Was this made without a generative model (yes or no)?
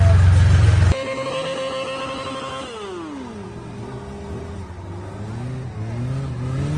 yes